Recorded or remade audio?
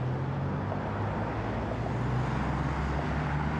recorded